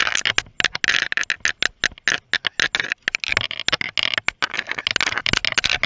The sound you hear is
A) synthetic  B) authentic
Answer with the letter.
B